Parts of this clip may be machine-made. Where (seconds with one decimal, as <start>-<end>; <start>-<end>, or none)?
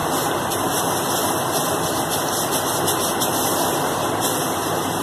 none